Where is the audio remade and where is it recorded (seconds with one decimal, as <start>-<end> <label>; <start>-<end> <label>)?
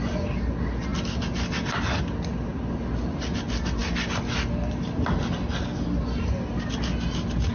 0.0-7.5 recorded